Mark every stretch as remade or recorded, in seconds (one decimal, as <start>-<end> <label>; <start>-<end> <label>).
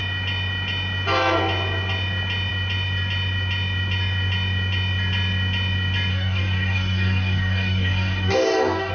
0.0-6.1 recorded; 6.1-8.9 remade